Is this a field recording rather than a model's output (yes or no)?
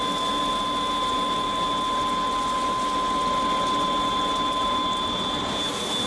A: yes